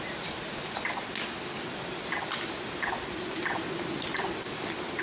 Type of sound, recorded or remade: recorded